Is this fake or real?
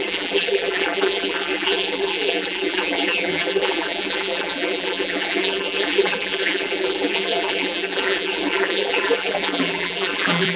fake